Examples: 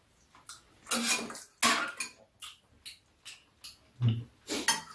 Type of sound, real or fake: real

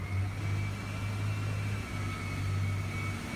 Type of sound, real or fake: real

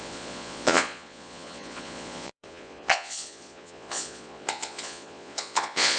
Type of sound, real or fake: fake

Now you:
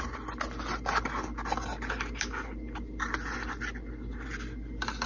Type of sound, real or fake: real